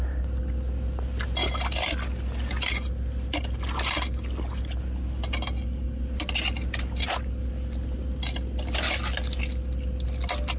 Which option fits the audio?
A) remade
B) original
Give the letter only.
B